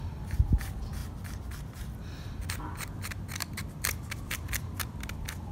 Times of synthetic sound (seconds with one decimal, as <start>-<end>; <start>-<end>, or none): none